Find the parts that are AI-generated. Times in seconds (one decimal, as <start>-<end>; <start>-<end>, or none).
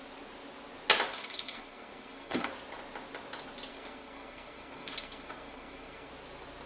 1.1-2.5; 3.7-6.1